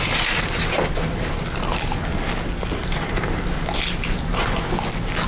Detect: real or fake real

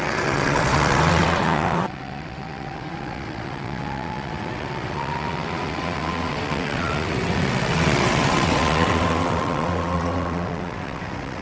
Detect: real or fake fake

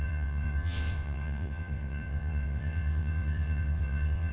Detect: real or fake fake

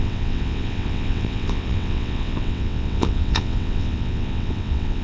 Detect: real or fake fake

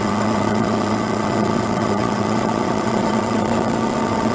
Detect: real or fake fake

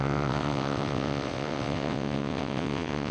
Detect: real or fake fake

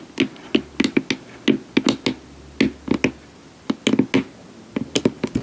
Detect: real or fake real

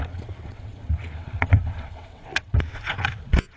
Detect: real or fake fake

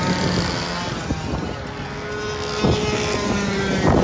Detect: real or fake real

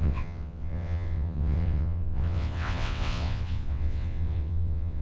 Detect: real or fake fake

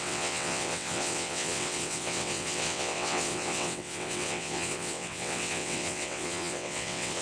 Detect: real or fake fake